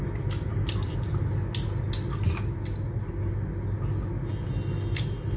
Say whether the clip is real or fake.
real